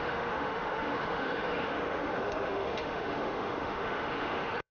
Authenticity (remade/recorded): remade